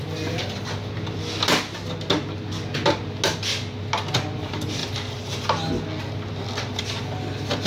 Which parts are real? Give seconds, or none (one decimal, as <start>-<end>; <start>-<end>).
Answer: 0.0-7.7